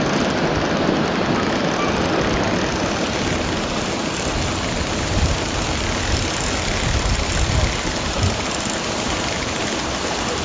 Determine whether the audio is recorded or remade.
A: recorded